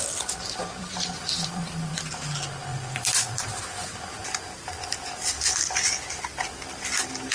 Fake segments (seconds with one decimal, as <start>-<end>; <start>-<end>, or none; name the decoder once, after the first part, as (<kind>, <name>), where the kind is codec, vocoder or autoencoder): 0.6-1.9 (vocoder, BigVGAN v2); 2.7-3.6; 4.2-5.0